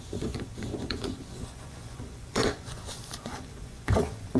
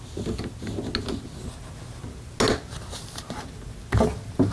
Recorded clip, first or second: second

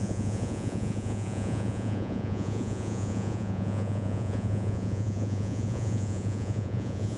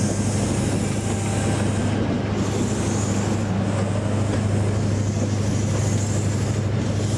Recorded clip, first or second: second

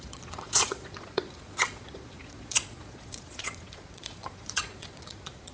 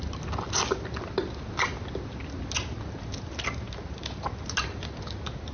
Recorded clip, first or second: second